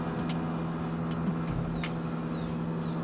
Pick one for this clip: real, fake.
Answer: real